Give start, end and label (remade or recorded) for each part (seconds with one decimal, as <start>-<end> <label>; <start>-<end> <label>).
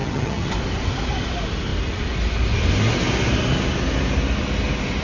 0.0-0.5 remade; 0.5-5.0 recorded